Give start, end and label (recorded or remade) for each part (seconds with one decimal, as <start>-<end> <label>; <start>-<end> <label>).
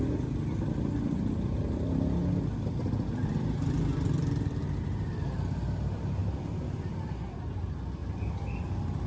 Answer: 0.0-9.1 recorded